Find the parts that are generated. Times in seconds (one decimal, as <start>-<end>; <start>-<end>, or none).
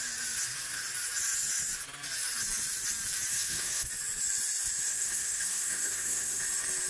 3.3-3.9; 4.9-6.4